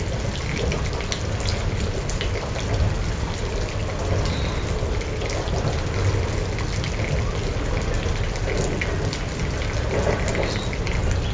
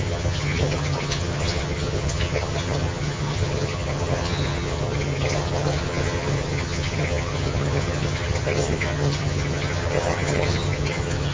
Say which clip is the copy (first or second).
second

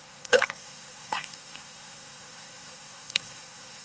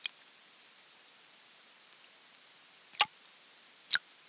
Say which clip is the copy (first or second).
first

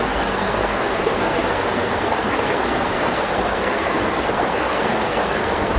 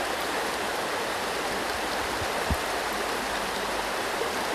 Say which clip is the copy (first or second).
first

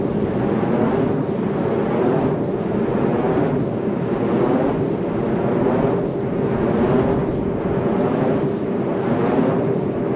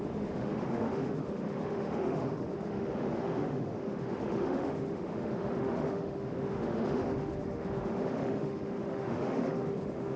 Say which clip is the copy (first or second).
second